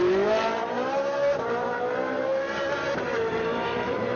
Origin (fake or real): fake